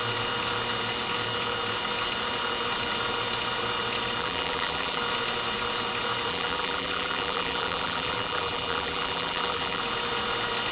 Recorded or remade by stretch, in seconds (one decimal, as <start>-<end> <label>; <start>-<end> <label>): 0.0-4.2 recorded; 4.2-5.0 remade; 5.0-6.3 recorded; 6.3-9.8 remade; 9.8-10.7 recorded